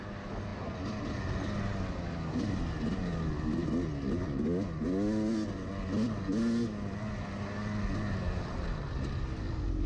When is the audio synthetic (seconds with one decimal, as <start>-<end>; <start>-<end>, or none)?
none

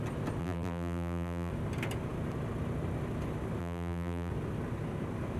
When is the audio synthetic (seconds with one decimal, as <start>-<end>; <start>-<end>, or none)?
0.4-1.5; 3.6-4.3